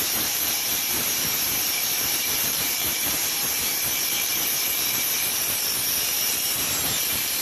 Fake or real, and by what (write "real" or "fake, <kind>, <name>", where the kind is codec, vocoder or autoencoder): fake, vocoder, BigVGAN v2